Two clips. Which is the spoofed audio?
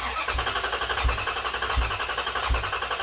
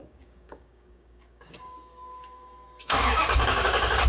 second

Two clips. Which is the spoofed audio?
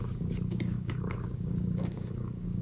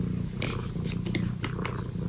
first